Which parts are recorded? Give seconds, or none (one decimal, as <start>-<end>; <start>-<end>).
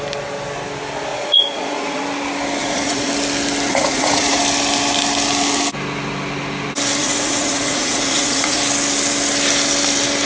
0.0-1.1; 2.0-2.6; 3.1-3.7; 4.4-7.0; 8.6-10.3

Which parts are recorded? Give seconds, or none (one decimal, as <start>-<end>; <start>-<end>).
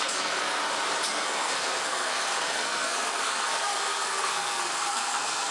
0.6-1.1